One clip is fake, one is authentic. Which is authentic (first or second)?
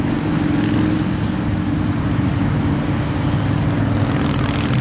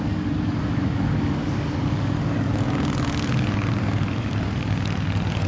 first